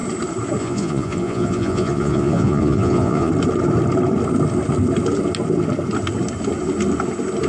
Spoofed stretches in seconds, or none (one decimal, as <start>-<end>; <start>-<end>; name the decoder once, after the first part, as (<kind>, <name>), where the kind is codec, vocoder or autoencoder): 0.6-3.3 (vocoder, Vocos)